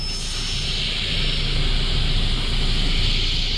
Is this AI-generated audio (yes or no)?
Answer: no